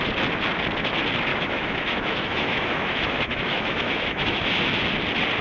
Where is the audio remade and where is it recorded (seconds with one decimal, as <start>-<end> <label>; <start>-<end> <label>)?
0.0-1.3 recorded; 1.3-4.5 remade; 4.5-5.4 recorded